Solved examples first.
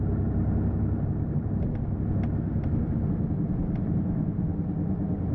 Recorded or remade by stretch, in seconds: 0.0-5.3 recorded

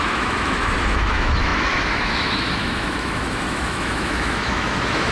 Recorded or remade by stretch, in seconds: 0.0-5.1 remade

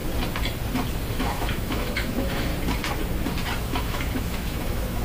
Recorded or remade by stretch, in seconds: 0.0-1.1 recorded; 1.1-2.5 remade; 2.5-3.6 recorded; 3.6-5.0 remade

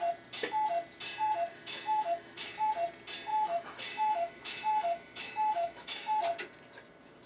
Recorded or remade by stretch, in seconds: 0.0-1.5 recorded; 1.5-2.7 remade; 2.7-3.3 recorded; 3.3-6.2 remade; 6.2-7.3 recorded